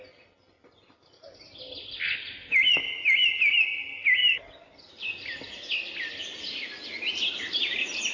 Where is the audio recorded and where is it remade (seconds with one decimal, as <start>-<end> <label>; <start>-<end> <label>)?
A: 0.0-8.1 recorded